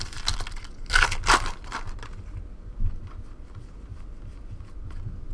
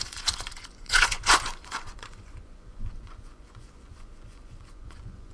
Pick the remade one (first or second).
second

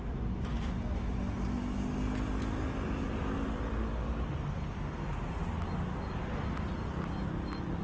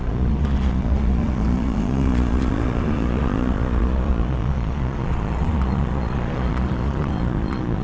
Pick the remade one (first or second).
second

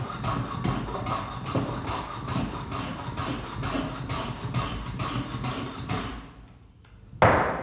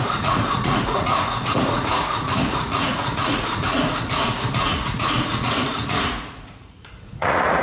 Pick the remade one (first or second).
second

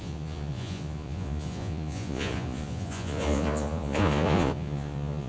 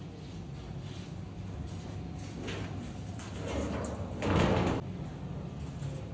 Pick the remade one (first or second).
first